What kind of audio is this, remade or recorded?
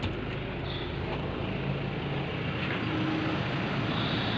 recorded